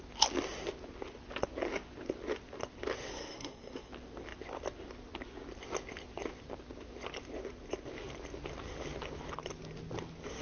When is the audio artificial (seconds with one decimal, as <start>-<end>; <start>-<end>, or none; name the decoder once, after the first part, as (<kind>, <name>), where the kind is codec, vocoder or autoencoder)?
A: 3.1-3.9 (codec, SNAC)